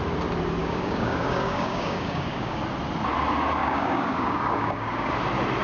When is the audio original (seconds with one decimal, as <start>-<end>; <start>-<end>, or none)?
0.0-0.6; 2.6-3.6; 5.1-5.6